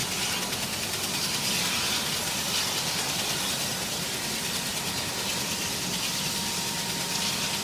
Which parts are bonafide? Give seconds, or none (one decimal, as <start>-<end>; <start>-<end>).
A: 0.0-7.6